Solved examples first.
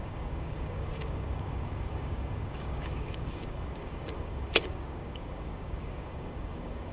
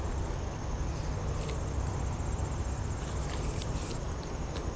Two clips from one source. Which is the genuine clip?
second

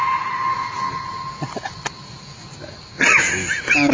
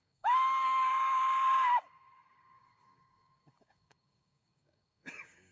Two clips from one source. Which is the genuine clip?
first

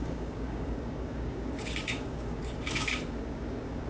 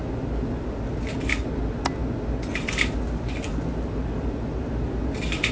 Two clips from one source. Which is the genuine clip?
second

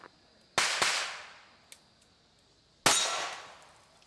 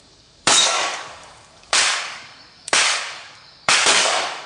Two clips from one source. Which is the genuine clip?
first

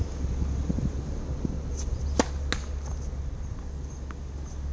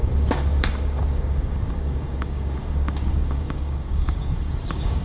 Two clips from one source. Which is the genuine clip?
first